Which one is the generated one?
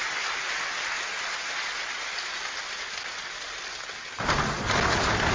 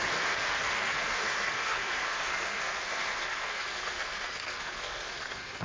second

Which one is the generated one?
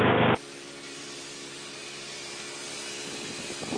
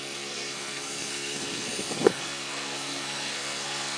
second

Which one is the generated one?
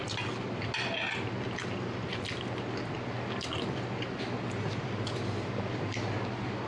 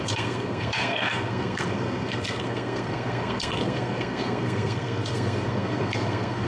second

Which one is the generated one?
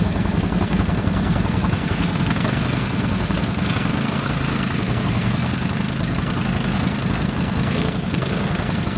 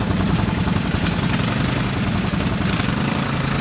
first